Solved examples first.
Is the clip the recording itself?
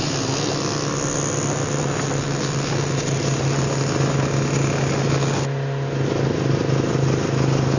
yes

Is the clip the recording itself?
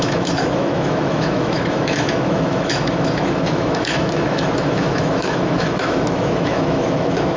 no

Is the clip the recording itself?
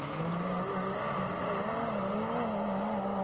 yes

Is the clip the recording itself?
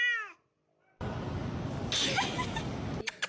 yes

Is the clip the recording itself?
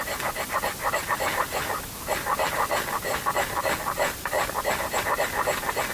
yes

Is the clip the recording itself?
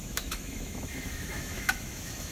no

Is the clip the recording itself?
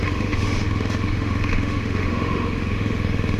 no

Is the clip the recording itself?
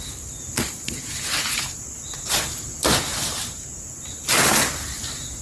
yes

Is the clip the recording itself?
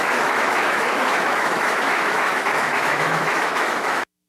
no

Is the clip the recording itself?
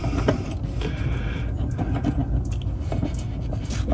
yes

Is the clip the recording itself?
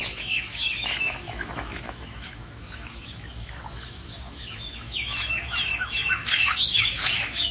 no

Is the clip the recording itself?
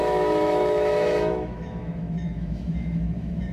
no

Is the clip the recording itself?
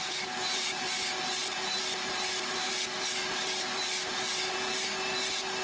yes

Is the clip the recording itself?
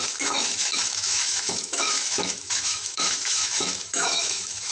no